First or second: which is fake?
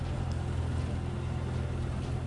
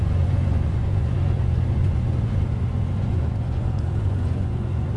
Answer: second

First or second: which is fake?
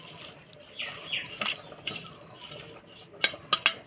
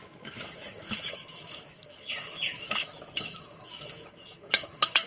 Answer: second